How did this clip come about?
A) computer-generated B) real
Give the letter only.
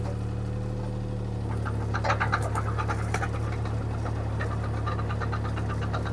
B